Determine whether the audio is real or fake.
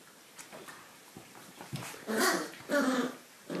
fake